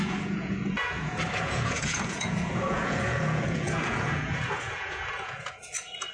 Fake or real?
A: fake